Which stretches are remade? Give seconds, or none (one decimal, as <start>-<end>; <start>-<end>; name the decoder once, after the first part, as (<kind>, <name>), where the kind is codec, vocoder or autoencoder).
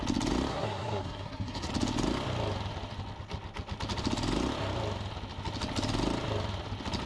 0.5-1.7 (codec, SNAC)